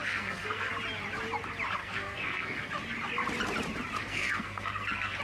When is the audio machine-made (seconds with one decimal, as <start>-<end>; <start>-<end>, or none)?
0.0-0.7; 1.8-2.7; 4.0-5.2